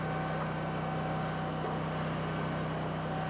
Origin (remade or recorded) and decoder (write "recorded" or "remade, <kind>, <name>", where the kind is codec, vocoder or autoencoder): recorded